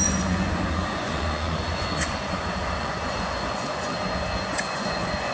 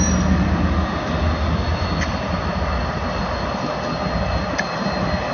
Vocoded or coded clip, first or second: first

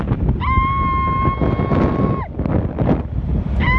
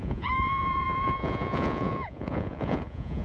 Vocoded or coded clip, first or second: second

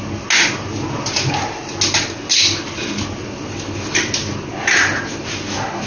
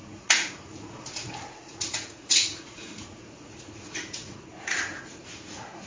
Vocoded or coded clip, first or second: second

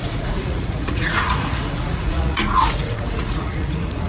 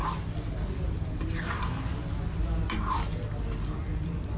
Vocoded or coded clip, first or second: first